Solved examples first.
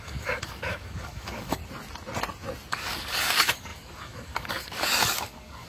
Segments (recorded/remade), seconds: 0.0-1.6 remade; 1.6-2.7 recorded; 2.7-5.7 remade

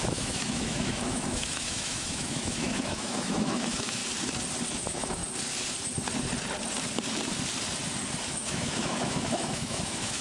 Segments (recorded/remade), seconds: 0.0-4.0 remade; 4.0-4.7 recorded; 4.7-5.2 remade; 5.2-8.3 recorded; 8.3-10.2 remade

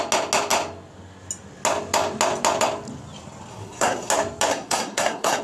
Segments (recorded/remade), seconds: 0.0-3.5 recorded; 3.5-4.1 remade; 4.1-4.5 recorded; 4.5-5.4 remade

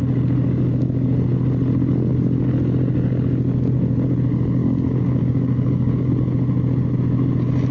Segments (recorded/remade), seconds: 0.0-4.6 recorded; 4.6-6.1 remade; 6.1-7.7 recorded